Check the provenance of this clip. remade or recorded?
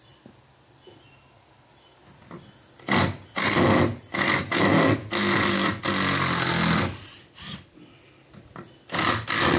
recorded